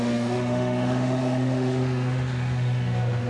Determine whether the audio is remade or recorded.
remade